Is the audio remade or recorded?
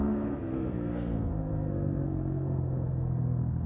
remade